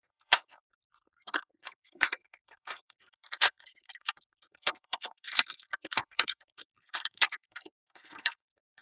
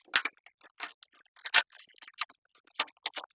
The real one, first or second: second